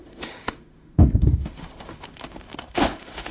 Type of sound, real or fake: fake